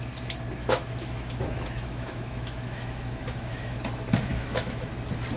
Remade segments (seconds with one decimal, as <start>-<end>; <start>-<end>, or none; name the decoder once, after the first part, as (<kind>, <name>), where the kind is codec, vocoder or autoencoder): 0.6-3.8 (autoencoder, DAC-VAE); 4.3-4.9